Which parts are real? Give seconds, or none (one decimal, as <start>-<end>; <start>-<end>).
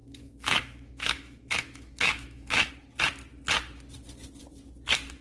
2.7-5.2